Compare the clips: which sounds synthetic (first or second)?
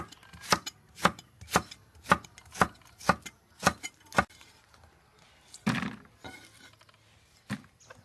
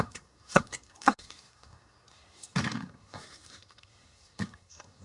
second